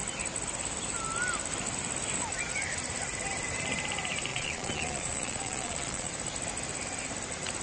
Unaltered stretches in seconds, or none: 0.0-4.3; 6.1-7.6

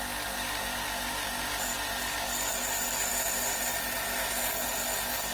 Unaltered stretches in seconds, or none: 0.0-5.3

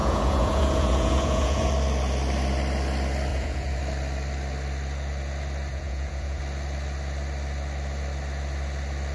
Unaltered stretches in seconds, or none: 1.7-3.3; 3.8-5.7; 6.4-9.1

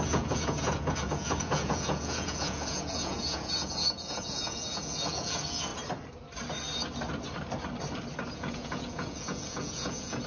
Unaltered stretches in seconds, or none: 5.7-8.3

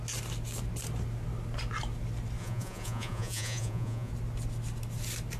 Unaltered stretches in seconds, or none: 0.0-2.4; 4.1-5.4